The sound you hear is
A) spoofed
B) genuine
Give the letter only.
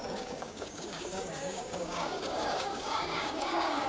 A